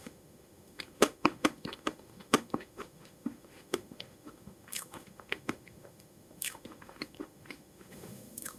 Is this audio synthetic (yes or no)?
yes